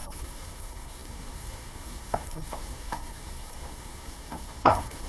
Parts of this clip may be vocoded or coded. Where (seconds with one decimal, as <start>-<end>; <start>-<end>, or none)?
0.0-5.1